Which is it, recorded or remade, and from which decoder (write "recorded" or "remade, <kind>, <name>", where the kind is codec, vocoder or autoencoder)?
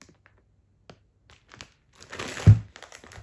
recorded